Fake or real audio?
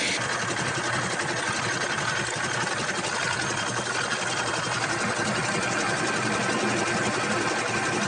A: real